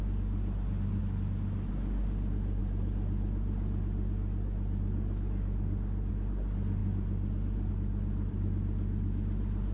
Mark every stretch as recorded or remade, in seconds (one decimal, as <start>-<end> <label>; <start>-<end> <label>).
0.0-1.0 remade; 1.0-1.7 recorded; 1.7-2.6 remade; 2.6-6.1 recorded; 6.1-6.8 remade; 6.8-7.7 recorded; 7.7-9.7 remade